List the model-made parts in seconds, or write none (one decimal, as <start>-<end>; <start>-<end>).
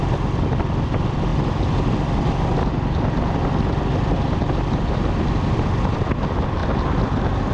none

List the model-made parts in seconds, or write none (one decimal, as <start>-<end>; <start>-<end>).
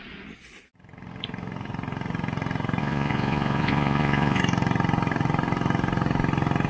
2.8-4.4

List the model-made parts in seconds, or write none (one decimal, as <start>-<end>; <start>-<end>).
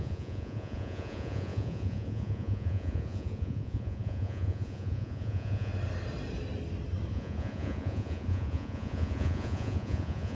0.0-5.7; 7.1-10.4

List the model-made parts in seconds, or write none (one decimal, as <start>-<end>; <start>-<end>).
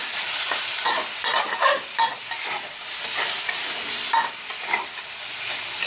0.0-0.9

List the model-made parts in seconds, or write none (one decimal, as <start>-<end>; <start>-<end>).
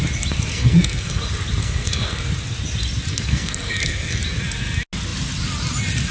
0.5-1.2; 1.6-2.2; 3.1-4.2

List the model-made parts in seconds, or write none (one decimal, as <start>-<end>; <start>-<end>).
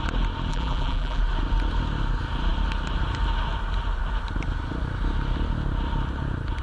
0.5-1.2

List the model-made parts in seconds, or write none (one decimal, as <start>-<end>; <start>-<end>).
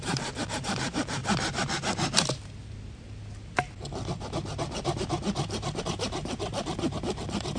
0.0-1.2; 5.8-7.6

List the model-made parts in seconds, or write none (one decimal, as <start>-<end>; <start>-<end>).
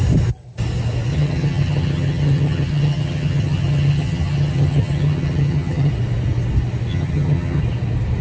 1.1-5.9; 6.9-7.6